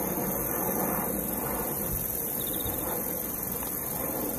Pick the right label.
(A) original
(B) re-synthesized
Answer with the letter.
A